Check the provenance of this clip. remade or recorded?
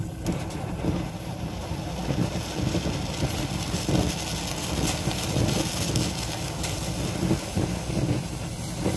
recorded